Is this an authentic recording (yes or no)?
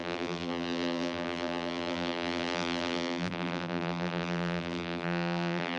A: no